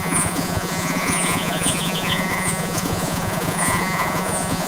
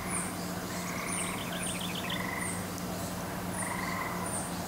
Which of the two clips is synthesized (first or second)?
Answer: first